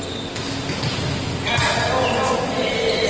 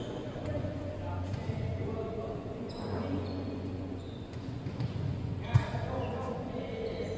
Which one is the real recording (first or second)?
first